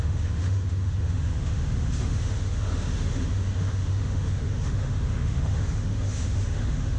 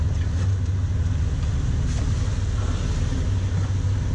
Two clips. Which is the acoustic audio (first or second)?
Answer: second